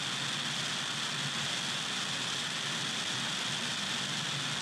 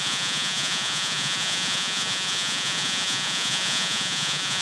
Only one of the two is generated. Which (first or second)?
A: second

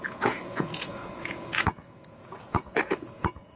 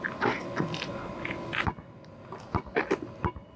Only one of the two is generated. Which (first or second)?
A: first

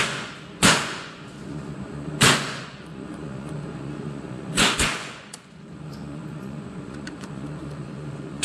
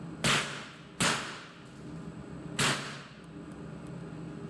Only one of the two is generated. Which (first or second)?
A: first